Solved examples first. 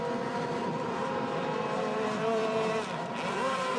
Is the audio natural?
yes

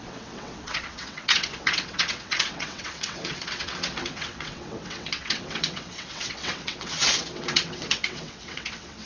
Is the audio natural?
no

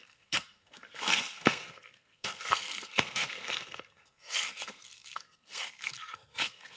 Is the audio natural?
no